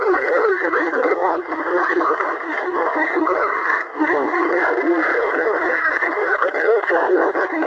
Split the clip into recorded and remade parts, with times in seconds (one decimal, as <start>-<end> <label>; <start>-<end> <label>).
0.0-4.6 remade; 4.6-5.2 recorded; 5.2-7.7 remade